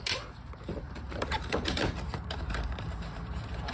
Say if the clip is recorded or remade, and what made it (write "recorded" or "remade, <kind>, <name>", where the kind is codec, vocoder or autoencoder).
remade, vocoder, BigVGAN v2